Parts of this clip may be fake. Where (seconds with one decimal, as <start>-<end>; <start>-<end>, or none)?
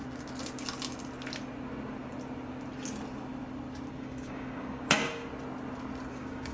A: 3.9-5.3; 6.1-6.5